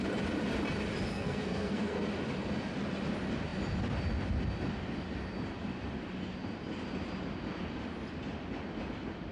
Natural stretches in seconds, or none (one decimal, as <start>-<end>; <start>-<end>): 0.0-1.1; 2.1-9.3